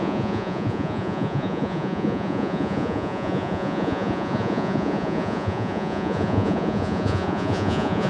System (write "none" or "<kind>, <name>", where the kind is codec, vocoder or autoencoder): vocoder, Vocos